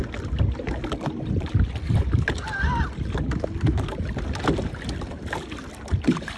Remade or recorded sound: recorded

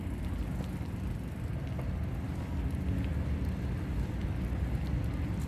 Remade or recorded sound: recorded